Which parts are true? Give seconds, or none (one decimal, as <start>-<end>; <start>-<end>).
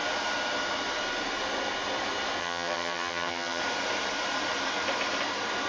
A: 0.0-2.4; 3.6-5.7